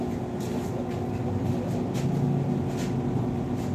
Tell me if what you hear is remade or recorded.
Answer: recorded